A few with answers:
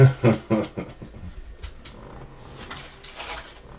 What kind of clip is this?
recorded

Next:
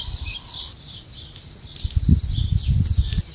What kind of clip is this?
recorded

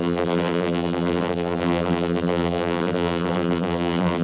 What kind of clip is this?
remade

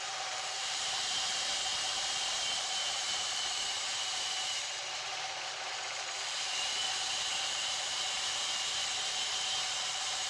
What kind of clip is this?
remade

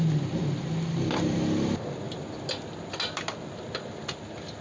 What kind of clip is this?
recorded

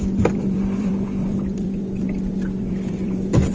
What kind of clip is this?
remade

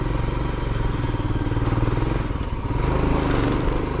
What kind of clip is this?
recorded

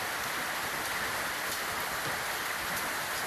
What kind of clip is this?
recorded